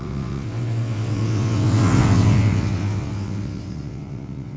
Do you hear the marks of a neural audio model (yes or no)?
yes